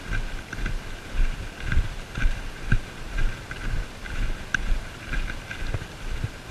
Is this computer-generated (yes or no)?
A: no